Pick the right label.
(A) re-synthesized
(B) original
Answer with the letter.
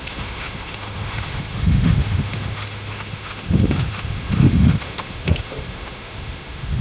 A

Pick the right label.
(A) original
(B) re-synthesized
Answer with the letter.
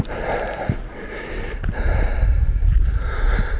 A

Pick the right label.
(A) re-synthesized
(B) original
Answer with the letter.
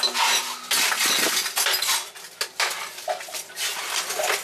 B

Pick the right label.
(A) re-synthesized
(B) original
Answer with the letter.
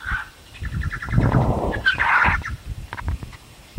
B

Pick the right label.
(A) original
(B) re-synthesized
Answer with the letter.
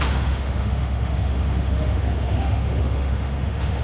B